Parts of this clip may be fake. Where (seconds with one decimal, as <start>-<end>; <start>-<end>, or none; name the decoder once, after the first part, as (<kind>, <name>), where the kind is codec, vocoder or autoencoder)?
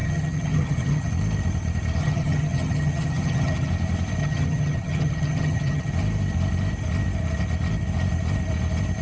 0.0-1.1 (vocoder, HiFi-GAN); 2.0-3.7; 4.2-5.9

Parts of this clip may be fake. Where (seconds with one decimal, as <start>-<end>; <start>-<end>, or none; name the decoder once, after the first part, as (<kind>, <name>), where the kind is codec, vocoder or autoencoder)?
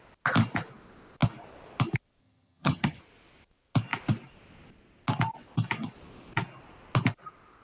2.2-3.0 (vocoder, HiFi-GAN)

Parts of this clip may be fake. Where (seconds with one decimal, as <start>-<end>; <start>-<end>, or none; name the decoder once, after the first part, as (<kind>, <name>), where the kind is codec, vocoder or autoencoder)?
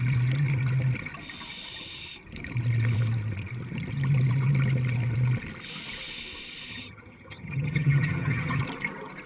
6.7-8.6 (vocoder, HiFi-GAN)